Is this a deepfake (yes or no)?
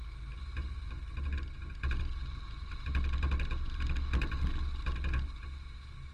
no